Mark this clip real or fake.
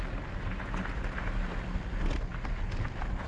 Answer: real